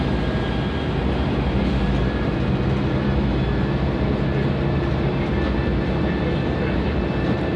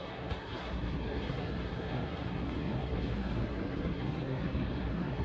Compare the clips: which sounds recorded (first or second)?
first